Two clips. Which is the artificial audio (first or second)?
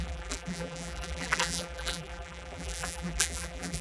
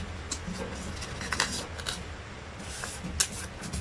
first